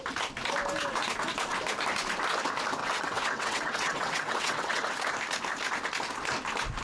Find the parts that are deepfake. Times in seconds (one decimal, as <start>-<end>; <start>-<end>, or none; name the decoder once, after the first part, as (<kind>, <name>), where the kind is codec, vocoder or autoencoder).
2.8-4.9 (vocoder, WaveNeXt)

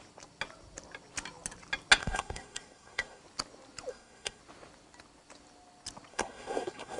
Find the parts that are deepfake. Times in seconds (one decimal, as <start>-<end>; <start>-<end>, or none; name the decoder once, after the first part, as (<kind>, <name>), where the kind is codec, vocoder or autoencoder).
2.0-3.2 (codec, SNAC); 3.9-4.4; 6.1-7.0

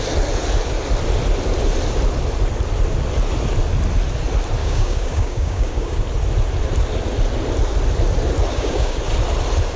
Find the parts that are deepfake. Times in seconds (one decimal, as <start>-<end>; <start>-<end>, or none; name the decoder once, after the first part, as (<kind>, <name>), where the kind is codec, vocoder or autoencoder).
4.6-6.0 (codec, DAC); 8.5-9.0

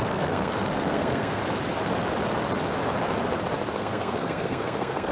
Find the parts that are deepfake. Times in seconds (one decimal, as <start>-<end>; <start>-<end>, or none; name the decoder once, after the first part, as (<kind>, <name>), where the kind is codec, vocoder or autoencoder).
0.0-1.4 (codec, SNAC); 3.8-5.1